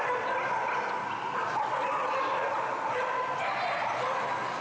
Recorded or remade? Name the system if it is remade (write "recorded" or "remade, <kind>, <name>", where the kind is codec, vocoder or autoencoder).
recorded